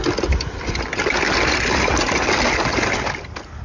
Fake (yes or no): no